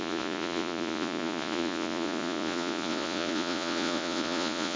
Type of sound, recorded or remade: remade